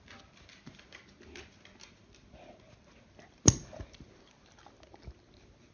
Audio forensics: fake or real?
real